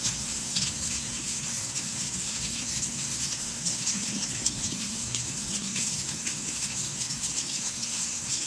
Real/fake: fake